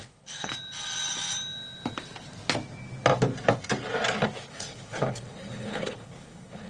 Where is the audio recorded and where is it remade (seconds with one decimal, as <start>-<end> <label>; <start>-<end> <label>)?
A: 0.0-0.5 remade; 0.5-4.5 recorded; 4.5-6.7 remade